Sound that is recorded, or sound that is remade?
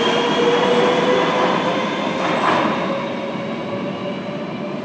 recorded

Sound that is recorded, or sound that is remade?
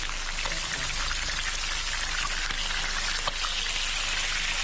recorded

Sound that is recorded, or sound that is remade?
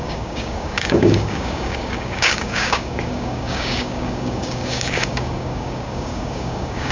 remade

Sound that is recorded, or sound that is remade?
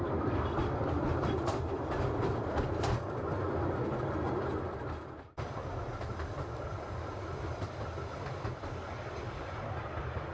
recorded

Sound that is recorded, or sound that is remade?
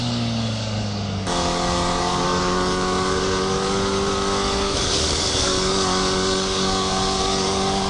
remade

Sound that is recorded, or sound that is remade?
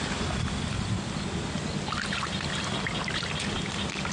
recorded